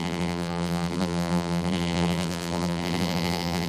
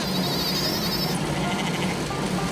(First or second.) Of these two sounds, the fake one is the first